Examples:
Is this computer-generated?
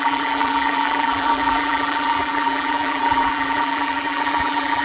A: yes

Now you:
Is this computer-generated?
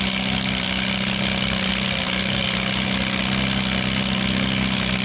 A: no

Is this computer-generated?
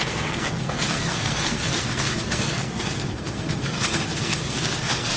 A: yes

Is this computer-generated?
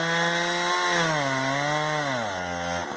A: no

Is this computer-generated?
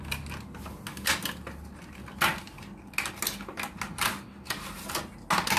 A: no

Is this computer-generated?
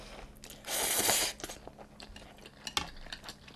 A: no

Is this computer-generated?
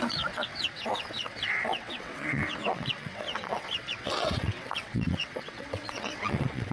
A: yes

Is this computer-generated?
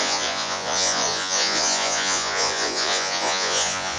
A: yes